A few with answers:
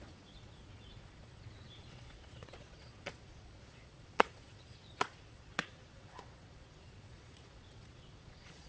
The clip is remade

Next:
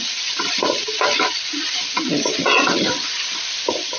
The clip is recorded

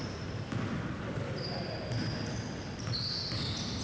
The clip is recorded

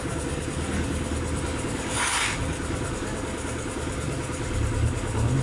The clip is remade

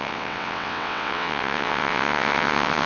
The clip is remade